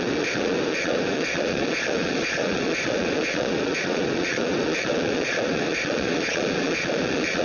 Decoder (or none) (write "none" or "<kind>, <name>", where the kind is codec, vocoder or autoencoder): vocoder, Vocos